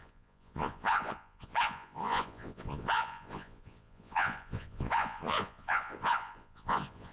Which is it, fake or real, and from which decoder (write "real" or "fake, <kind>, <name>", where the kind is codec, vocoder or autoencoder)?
fake, vocoder, Vocos